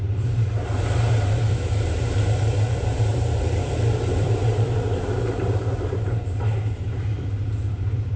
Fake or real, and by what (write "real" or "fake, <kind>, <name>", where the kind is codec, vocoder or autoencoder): fake, vocoder, BigVGAN v2